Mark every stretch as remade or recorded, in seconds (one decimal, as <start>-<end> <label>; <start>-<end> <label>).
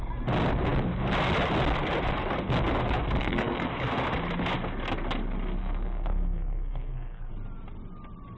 0.0-3.2 recorded; 3.2-3.7 remade; 3.7-5.6 recorded; 5.6-7.3 remade; 7.3-8.4 recorded